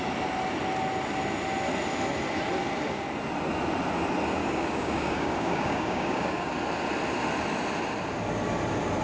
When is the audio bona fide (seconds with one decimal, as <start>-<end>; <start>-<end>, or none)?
0.0-4.4; 6.5-9.0